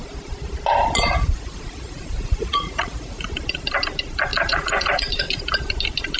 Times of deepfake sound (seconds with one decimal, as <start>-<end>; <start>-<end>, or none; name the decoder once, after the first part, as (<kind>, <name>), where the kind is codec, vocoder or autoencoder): 1.1-3.3 (vocoder, Vocos); 4.3-5.4

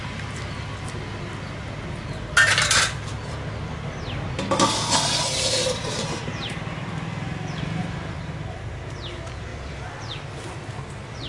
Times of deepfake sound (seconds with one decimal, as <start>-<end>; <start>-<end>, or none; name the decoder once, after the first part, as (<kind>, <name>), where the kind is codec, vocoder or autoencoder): 2.5-6.6 (vocoder, BigVGAN v2); 9.5-10.2

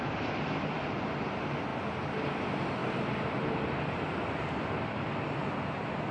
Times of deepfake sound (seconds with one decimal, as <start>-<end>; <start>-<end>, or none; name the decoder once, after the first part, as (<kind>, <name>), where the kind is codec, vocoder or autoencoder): none

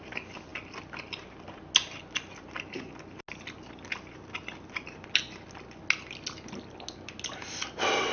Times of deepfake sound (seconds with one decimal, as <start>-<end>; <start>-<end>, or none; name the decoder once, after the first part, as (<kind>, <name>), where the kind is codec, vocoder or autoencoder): none

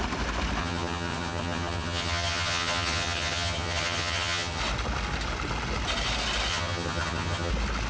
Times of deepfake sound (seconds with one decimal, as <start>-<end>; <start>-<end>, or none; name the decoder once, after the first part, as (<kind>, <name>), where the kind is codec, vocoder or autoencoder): 0.6-4.6 (vocoder, HiFi-GAN); 6.5-7.5

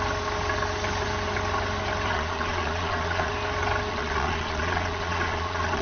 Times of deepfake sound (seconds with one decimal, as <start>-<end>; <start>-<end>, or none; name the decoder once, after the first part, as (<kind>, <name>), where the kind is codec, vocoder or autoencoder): 2.1-3.3 (vocoder, Vocos); 3.9-5.8

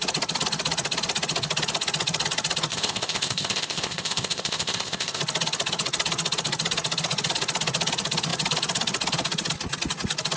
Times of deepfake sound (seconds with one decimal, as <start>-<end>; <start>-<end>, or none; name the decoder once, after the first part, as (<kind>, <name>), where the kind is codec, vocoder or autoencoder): 2.7-5.2 (codec, ZipCodec)